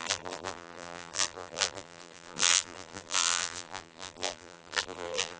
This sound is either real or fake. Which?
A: fake